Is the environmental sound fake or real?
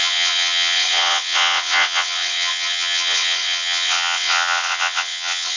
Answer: fake